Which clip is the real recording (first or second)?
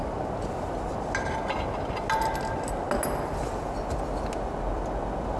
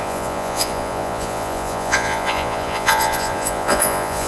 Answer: first